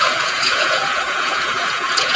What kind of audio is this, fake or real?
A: fake